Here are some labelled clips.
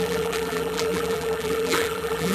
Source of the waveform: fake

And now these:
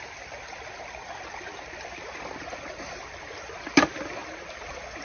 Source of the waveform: real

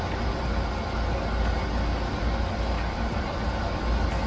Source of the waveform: real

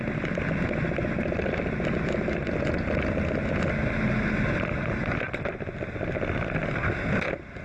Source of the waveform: real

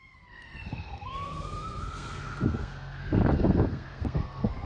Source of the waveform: fake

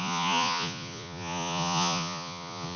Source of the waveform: fake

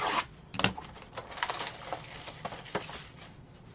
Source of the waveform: real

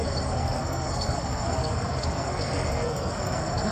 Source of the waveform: fake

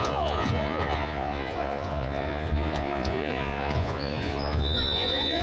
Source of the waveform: fake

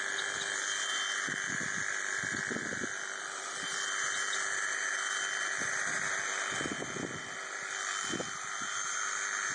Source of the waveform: real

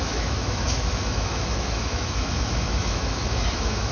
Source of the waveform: fake